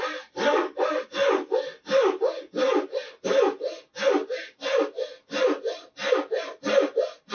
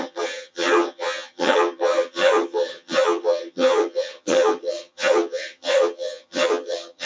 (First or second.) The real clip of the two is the first